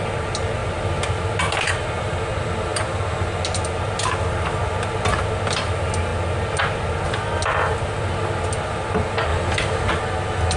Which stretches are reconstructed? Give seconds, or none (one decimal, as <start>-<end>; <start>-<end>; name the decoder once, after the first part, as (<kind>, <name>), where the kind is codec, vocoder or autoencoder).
0.6-1.7 (vocoder, BigVGAN v2)